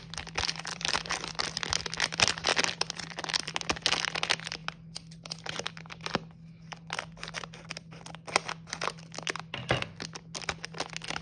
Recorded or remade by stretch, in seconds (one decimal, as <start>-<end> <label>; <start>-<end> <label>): 0.0-0.7 recorded; 0.7-1.7 remade; 1.7-2.5 recorded; 2.5-3.5 remade; 3.5-11.2 recorded